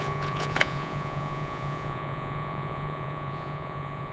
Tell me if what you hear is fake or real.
fake